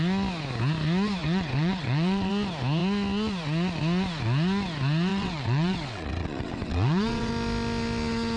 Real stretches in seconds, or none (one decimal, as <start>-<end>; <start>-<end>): 0.0-1.2; 2.3-5.1; 7.3-8.4